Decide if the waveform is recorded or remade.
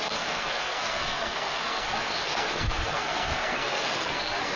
remade